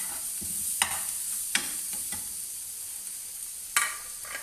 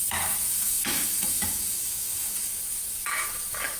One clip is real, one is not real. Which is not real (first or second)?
second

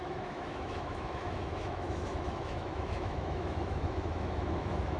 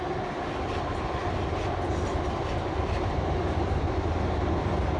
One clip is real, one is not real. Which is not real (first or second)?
first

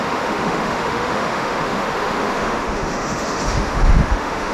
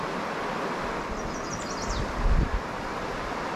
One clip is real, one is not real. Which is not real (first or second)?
first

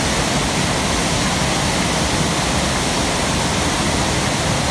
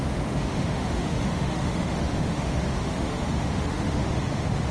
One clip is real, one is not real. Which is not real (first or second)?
second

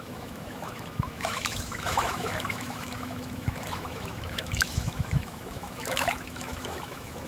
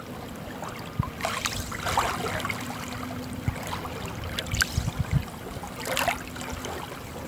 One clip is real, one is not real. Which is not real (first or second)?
first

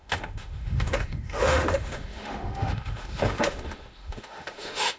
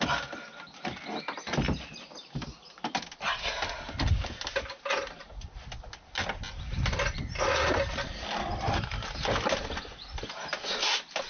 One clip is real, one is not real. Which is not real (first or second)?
first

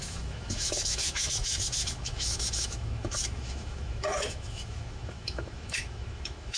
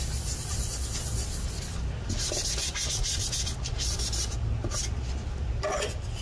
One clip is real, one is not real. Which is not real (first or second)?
first